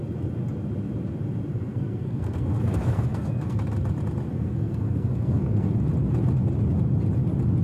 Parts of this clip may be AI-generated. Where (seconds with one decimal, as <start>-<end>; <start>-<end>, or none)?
1.5-3.6; 4.3-5.7